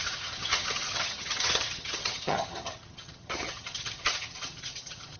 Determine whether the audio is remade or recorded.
remade